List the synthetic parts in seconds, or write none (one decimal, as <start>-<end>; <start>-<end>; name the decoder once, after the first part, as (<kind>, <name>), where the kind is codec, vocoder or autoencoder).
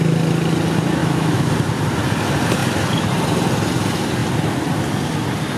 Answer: 1.0-1.5 (autoencoder, DAC-VAE)